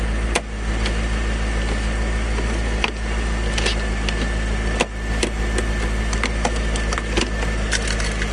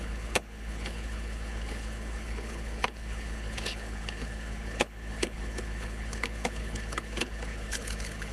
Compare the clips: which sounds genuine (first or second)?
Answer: first